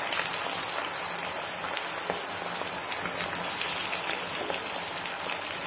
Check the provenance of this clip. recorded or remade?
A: recorded